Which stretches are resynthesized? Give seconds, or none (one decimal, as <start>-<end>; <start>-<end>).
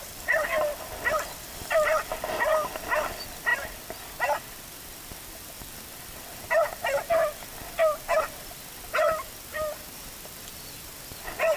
none